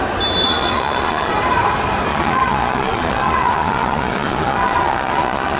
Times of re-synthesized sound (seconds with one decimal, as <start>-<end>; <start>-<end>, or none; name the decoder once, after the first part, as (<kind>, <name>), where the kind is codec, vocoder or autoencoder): 0.4-1.3 (vocoder, Vocos); 2.1-5.6